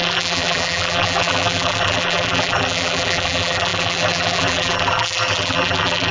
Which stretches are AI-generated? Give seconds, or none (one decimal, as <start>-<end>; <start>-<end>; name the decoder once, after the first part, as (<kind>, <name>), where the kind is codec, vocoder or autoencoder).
0.0-6.1 (vocoder, BigVGAN v2)